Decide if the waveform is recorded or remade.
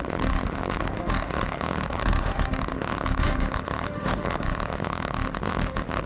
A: remade